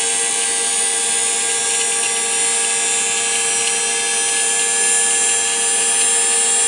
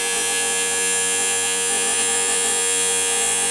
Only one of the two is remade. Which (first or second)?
second